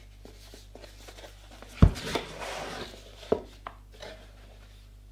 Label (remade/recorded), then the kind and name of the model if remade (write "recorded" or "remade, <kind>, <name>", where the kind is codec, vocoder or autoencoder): recorded